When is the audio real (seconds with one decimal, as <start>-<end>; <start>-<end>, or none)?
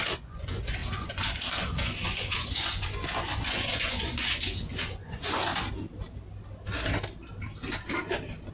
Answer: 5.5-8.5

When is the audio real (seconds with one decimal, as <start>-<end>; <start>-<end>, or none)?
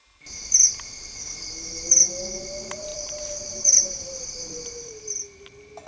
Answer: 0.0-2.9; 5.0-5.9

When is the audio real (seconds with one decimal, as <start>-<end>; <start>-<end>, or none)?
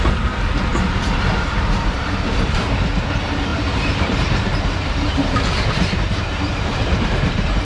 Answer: 0.0-0.7; 2.7-3.5